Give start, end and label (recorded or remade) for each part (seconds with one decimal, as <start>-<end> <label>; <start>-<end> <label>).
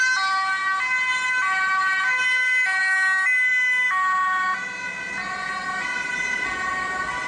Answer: 0.0-7.3 recorded